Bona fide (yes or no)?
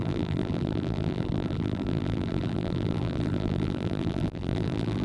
no